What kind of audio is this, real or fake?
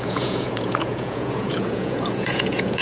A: fake